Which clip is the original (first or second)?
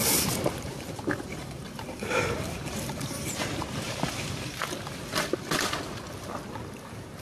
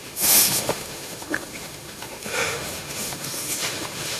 first